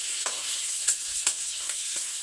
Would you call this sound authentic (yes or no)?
no